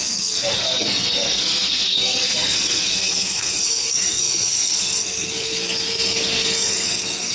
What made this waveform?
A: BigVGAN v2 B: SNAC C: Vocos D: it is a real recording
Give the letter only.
B